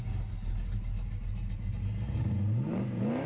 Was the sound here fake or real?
real